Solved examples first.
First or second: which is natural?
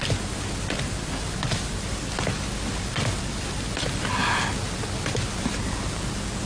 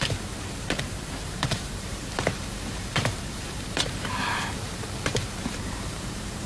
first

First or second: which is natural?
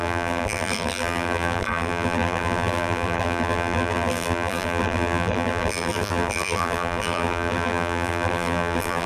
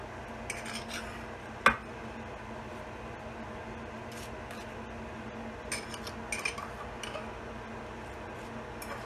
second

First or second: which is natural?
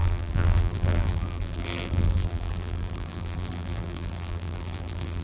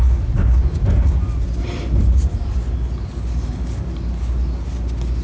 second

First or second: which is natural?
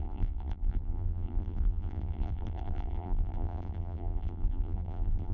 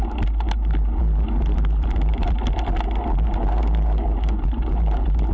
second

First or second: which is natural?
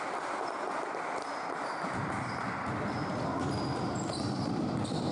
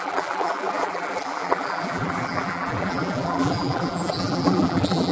first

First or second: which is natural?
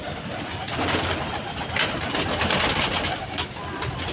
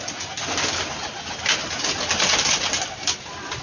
second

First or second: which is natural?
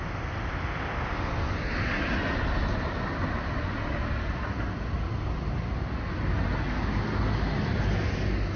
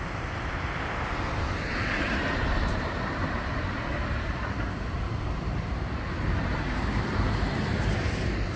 first